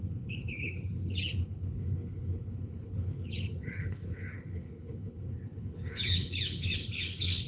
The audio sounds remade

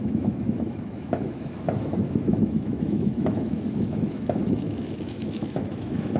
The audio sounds remade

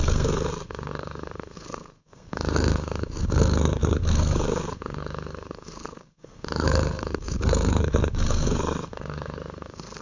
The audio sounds remade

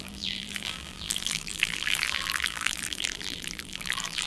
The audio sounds remade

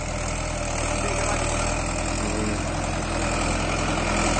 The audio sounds recorded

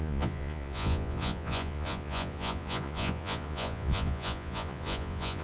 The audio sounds remade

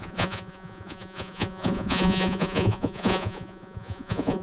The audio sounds remade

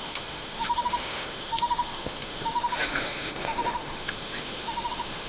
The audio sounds remade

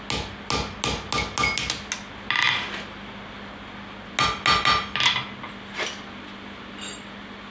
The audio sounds recorded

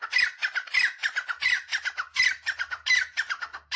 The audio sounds remade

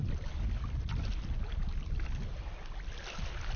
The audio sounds recorded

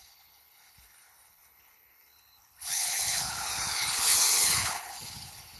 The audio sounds remade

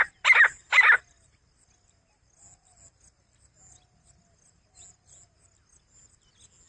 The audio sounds recorded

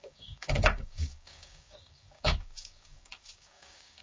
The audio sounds remade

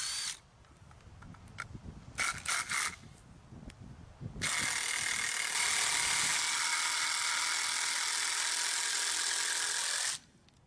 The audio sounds recorded